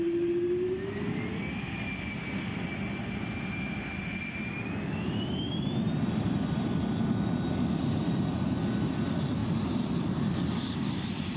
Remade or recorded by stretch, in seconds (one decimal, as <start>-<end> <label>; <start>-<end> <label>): 0.0-11.4 recorded